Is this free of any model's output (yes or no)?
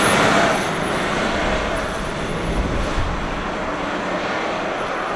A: yes